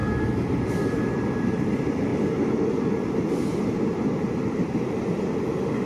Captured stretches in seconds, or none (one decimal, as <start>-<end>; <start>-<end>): 0.0-0.7; 2.1-5.9